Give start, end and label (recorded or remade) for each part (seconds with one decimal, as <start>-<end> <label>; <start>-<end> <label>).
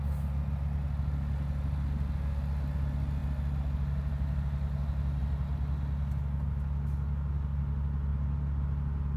0.0-9.2 recorded